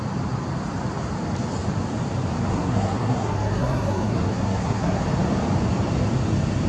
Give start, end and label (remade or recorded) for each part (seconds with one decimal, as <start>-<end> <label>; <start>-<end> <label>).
0.0-2.5 recorded; 2.5-5.0 remade; 5.0-6.7 recorded